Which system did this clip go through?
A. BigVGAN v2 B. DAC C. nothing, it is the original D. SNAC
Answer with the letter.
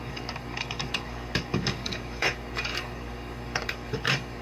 B